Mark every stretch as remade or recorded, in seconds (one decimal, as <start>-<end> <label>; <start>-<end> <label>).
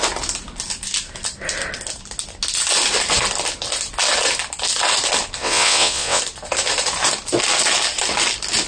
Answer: 0.0-5.4 recorded; 5.4-6.2 remade; 6.2-8.7 recorded